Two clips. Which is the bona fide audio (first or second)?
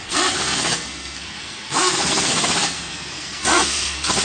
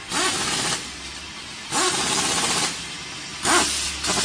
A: second